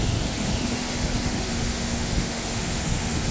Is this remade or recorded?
remade